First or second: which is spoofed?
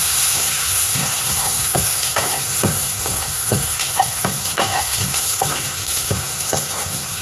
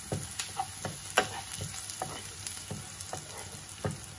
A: first